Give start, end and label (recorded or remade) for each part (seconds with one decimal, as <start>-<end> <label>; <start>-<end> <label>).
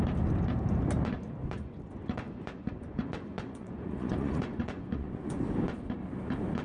0.0-1.4 recorded; 1.4-5.4 remade; 5.4-6.6 recorded